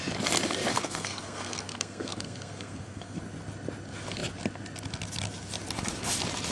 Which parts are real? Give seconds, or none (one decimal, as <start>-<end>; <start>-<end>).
0.0-0.7; 3.2-6.5